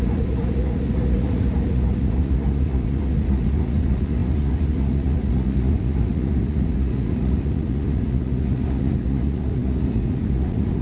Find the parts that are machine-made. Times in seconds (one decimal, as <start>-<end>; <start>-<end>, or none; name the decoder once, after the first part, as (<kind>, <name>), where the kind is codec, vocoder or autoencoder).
0.0-10.8 (vocoder, Vocos)